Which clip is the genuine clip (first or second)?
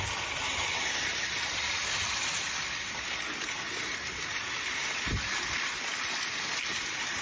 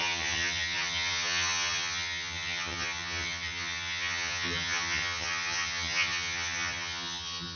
first